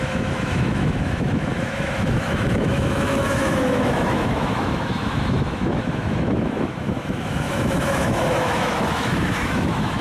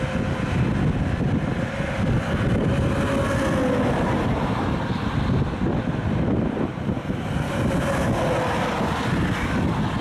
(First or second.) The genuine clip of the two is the second